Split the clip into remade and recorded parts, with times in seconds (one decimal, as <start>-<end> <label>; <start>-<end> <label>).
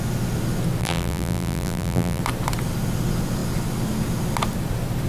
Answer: 0.0-0.8 recorded; 0.8-2.2 remade; 2.2-5.1 recorded